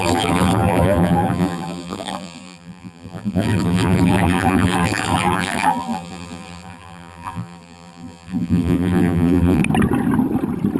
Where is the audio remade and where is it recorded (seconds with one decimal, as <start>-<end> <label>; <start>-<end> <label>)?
0.0-9.6 remade; 9.6-10.8 recorded